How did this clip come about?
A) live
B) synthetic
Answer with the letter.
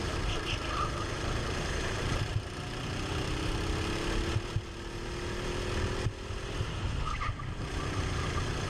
A